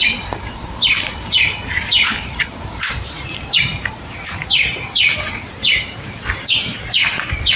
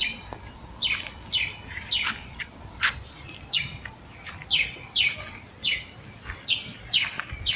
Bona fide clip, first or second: second